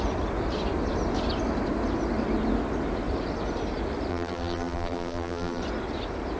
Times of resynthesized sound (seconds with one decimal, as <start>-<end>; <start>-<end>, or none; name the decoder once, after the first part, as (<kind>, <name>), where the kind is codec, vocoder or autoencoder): 4.1-5.6 (vocoder, BigVGAN v2)